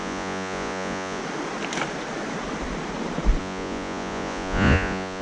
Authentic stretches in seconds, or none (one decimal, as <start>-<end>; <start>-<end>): 1.2-3.4